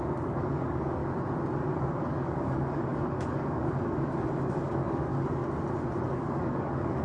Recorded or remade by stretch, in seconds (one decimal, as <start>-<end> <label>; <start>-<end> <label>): 0.0-1.0 remade; 1.0-1.7 recorded; 1.7-5.4 remade; 5.4-6.1 recorded; 6.1-7.0 remade